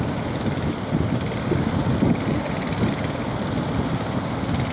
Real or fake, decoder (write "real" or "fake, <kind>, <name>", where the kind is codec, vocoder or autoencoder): real